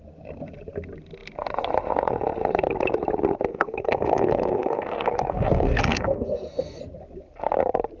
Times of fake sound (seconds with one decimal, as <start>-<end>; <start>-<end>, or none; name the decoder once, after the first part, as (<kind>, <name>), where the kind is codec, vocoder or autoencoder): 3.5-6.8 (codec, SNAC)